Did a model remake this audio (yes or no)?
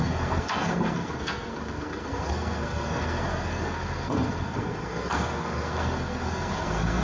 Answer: yes